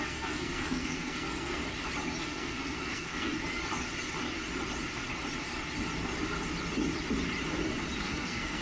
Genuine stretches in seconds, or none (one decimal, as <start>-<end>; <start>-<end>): 1.6-2.2; 3.3-8.0